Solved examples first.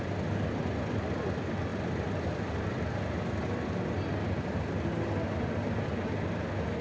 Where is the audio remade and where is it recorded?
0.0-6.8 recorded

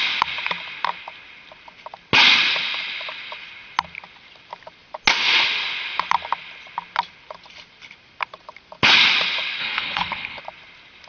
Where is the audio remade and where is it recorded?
0.0-9.6 recorded; 9.6-10.4 remade; 10.4-11.1 recorded

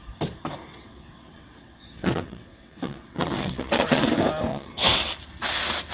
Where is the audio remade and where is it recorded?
0.0-0.7 recorded; 0.7-4.1 remade; 4.1-4.5 recorded; 4.5-5.1 remade; 5.1-5.9 recorded

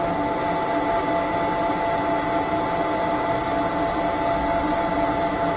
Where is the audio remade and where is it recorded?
0.0-5.6 recorded

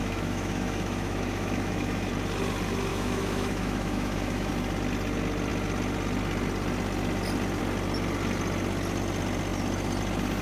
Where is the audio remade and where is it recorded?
0.0-2.1 remade; 2.1-2.9 recorded; 2.9-4.5 remade; 4.5-10.4 recorded

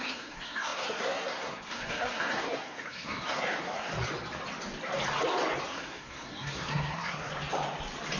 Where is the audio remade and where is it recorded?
0.0-3.9 remade; 3.9-5.6 recorded; 5.6-7.3 remade; 7.3-8.2 recorded

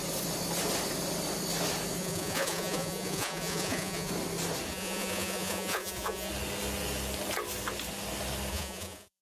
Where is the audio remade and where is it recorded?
0.0-2.0 recorded; 2.0-4.1 remade; 4.1-4.7 recorded; 4.7-6.3 remade; 6.3-8.5 recorded; 8.5-9.2 remade

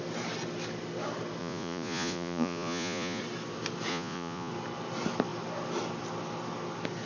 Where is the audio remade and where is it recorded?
0.0-1.4 recorded; 1.4-3.2 remade; 3.2-3.9 recorded; 3.9-4.5 remade; 4.5-7.1 recorded